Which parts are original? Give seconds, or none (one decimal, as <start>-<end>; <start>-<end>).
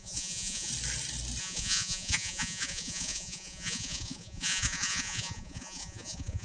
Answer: 0.7-1.4